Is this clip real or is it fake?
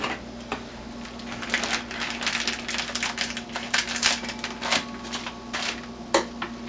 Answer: real